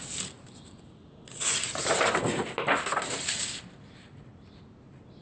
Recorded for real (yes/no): yes